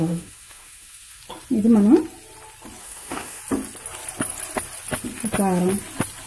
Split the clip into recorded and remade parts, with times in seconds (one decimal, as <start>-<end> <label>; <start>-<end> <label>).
0.0-1.2 remade; 1.2-2.8 recorded; 2.8-3.4 remade; 3.4-6.3 recorded